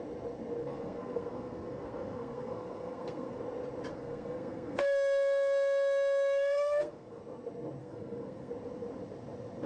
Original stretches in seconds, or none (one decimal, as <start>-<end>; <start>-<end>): 0.0-0.6; 3.4-3.9; 7.2-7.8; 8.5-9.7